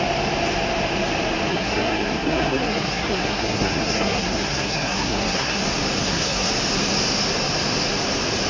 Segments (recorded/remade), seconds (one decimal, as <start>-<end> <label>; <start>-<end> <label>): 0.0-1.5 recorded; 1.5-5.6 remade; 5.6-6.0 recorded; 6.0-6.5 remade; 6.5-8.5 recorded